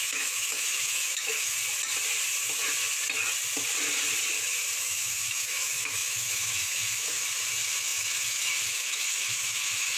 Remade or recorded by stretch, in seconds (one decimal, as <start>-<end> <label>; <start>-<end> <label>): 0.0-1.6 remade; 1.6-4.8 recorded; 4.8-10.0 remade